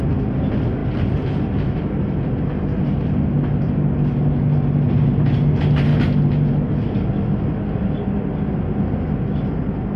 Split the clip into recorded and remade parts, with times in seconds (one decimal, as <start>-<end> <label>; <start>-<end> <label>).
0.0-0.8 recorded; 0.8-3.7 remade; 3.7-10.0 recorded